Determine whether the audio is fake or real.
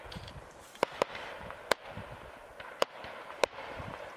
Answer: fake